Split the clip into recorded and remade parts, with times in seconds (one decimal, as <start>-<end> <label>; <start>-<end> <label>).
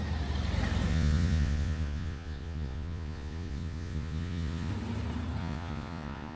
0.0-0.9 recorded; 0.9-4.7 remade; 4.7-5.4 recorded; 5.4-6.4 remade